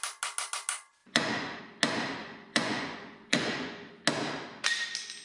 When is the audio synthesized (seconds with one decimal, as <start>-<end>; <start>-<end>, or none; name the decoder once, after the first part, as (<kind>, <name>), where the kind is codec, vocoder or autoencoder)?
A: 1.0-1.6 (vocoder, Vocos); 2.2-3.9